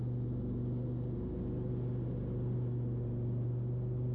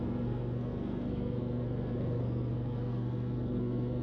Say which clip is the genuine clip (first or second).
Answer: first